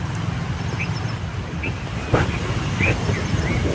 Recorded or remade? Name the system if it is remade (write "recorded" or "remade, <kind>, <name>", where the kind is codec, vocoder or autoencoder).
recorded